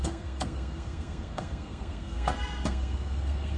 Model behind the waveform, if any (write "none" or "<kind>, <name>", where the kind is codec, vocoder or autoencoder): codec, SNAC